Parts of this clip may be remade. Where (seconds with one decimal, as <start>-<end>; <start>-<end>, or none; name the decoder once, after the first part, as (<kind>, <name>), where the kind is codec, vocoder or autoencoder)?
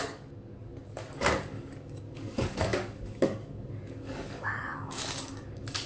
0.0-5.9 (codec, DAC)